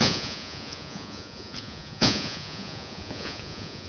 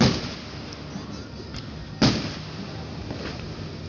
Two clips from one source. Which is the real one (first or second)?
second